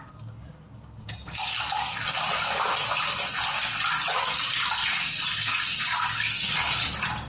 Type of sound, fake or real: real